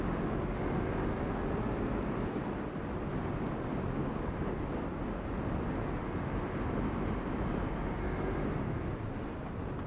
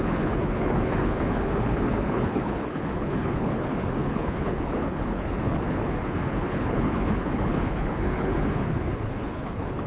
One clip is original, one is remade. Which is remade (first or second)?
second